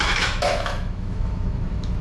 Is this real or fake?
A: fake